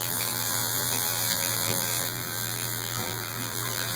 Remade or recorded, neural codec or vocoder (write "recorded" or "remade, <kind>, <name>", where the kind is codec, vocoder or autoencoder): remade, vocoder, BigVGAN v2